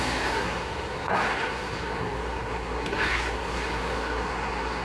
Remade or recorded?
remade